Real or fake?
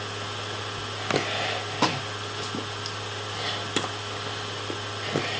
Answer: real